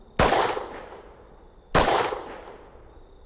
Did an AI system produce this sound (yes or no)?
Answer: no